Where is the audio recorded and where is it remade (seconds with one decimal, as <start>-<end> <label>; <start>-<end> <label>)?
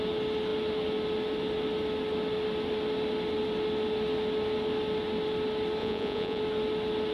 0.0-5.8 recorded; 5.8-6.4 remade; 6.4-7.1 recorded